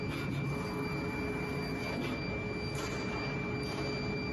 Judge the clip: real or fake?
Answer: real